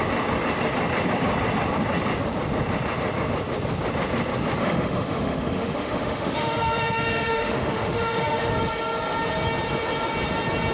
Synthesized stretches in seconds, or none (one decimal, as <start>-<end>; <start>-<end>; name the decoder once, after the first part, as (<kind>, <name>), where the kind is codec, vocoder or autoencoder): 4.6-8.5 (autoencoder, DAC-VAE)